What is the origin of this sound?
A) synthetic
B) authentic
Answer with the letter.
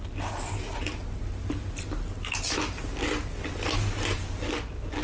B